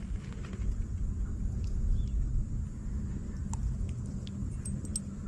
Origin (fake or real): real